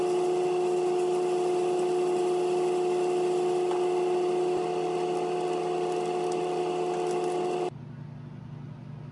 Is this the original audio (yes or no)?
yes